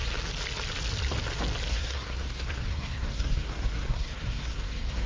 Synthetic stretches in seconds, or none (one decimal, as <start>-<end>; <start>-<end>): 1.7-5.1